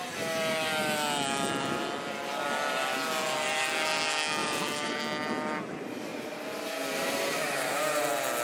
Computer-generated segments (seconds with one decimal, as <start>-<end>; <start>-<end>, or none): 4.4-5.0; 6.1-8.0